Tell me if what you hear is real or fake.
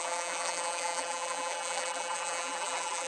fake